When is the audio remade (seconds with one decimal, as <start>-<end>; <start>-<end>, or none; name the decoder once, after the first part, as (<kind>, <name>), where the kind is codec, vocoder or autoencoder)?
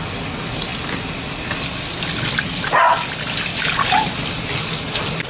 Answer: none